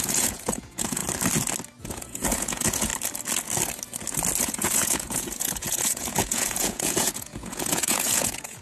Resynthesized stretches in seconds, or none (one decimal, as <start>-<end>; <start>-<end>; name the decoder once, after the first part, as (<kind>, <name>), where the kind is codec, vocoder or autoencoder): 0.0-1.0 (vocoder, Vocos); 1.8-2.9; 4.4-8.6